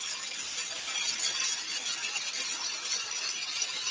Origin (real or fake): real